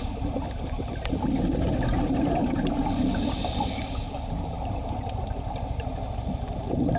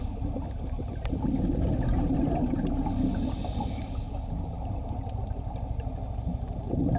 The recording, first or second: second